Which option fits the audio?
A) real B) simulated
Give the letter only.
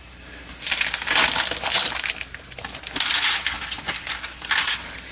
A